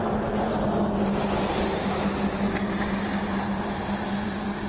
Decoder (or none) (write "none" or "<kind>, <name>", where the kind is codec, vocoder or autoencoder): none